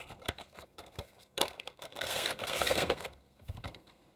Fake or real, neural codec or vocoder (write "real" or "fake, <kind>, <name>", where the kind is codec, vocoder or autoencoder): fake, codec, SNAC